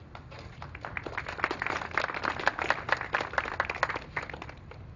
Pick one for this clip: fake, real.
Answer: real